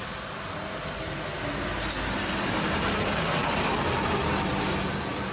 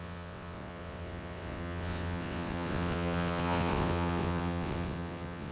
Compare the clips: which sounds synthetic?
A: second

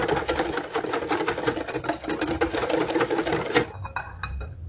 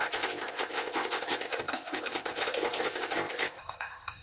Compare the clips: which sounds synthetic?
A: second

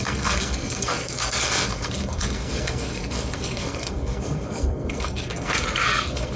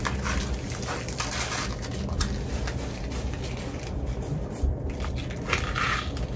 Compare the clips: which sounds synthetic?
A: first